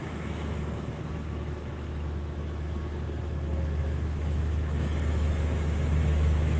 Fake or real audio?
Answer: fake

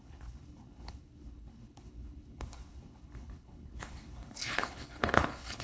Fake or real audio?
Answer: fake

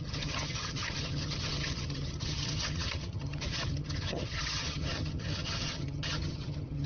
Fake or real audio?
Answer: fake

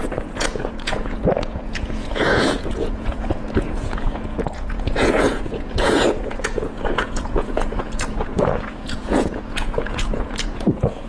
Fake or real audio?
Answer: fake